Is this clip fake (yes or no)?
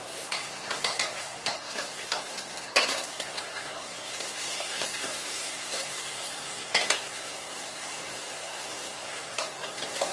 yes